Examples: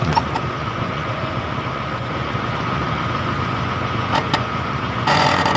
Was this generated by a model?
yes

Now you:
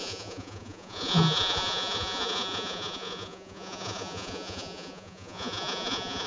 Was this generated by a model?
yes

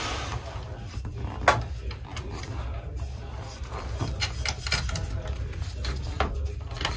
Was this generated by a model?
no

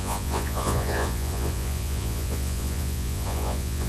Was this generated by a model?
yes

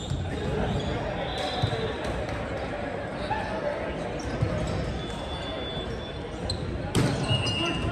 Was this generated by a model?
no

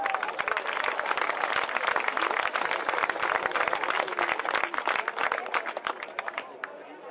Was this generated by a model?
no